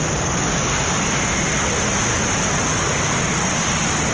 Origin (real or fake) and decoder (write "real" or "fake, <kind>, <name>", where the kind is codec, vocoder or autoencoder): real